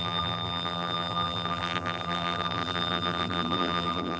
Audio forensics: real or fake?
fake